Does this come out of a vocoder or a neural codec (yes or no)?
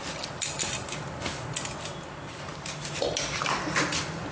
no